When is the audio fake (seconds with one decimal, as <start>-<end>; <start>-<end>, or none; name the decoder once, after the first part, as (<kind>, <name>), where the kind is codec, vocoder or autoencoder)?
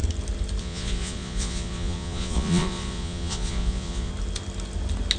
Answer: 0.6-4.1 (vocoder, Vocos)